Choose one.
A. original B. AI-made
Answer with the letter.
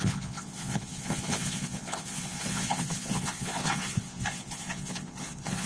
B